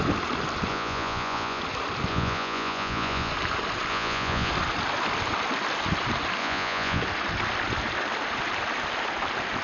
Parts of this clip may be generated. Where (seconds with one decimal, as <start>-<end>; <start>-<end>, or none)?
0.7-1.6; 2.1-3.3; 3.9-4.5; 6.4-7.0